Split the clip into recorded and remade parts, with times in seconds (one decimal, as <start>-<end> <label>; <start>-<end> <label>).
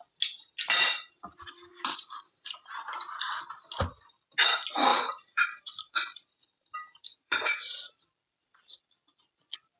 0.0-1.7 recorded; 1.7-2.7 remade; 2.7-4.9 recorded; 4.9-7.8 remade; 7.8-9.8 recorded